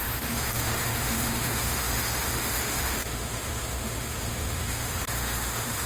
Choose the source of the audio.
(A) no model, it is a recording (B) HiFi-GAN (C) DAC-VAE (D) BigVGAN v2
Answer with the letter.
C